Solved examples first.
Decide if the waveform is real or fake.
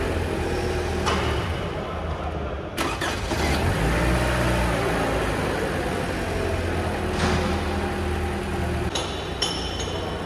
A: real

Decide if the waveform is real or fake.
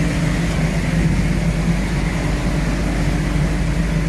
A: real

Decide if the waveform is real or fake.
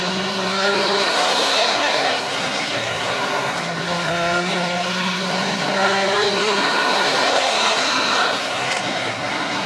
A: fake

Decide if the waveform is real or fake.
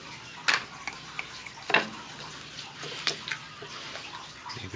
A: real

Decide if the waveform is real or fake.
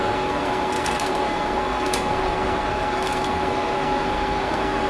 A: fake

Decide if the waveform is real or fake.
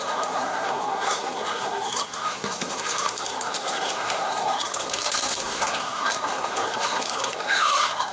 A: fake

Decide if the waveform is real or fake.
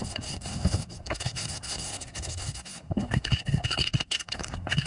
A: fake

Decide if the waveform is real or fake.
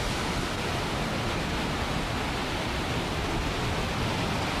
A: real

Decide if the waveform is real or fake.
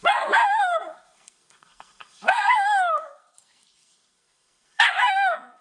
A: fake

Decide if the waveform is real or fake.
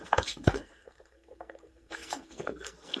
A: fake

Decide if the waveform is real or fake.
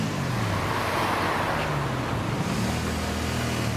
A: real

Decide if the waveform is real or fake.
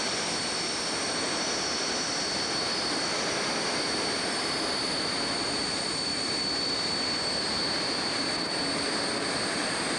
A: real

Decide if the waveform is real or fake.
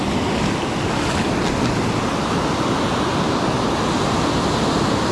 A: real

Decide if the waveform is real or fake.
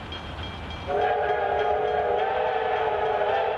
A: real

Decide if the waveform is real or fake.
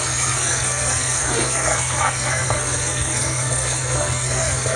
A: fake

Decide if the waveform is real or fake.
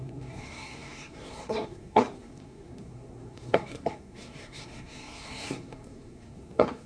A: fake